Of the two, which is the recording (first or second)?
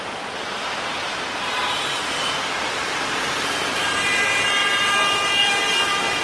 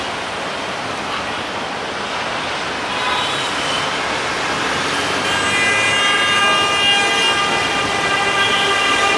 second